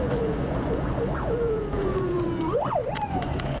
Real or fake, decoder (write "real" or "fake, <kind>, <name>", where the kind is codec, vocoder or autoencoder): fake, vocoder, Vocos